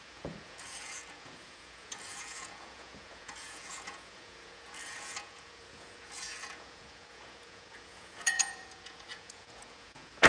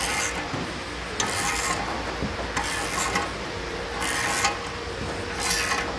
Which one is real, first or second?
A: second